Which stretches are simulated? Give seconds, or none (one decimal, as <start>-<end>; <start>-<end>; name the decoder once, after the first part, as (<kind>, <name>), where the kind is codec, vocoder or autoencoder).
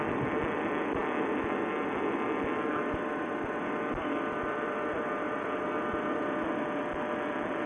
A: none